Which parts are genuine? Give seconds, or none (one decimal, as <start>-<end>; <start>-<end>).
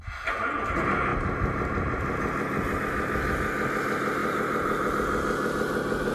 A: 0.0-4.2; 4.9-6.1